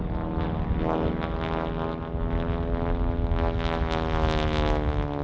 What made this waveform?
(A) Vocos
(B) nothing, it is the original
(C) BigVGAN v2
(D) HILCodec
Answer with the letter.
B